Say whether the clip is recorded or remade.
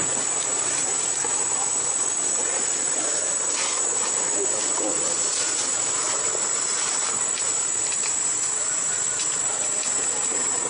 recorded